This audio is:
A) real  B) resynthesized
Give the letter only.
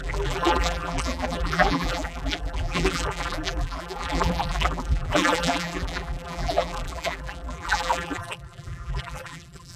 B